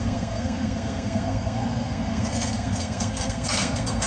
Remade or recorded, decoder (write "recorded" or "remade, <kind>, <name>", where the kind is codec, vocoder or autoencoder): remade, codec, SNAC